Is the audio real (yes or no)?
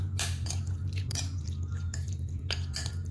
no